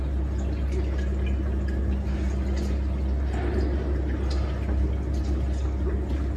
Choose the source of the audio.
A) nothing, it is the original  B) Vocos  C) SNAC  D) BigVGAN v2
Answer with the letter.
A